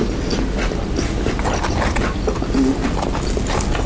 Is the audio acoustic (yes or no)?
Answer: yes